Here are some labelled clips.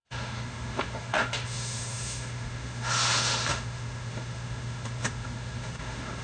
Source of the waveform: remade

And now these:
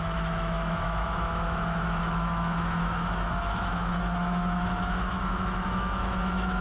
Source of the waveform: remade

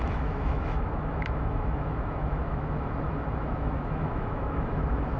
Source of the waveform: remade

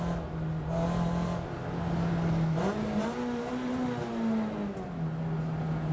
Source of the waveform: recorded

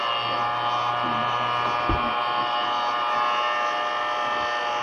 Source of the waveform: recorded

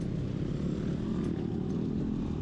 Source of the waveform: recorded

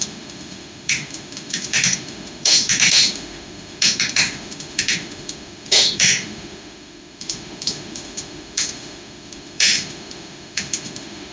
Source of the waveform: remade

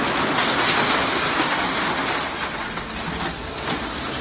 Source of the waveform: recorded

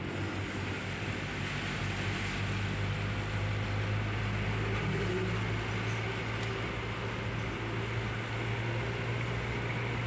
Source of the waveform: recorded